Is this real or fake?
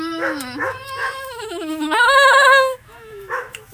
fake